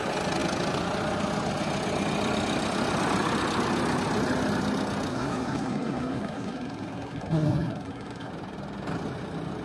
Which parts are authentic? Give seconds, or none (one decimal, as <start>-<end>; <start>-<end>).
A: 0.0-5.1; 8.3-9.6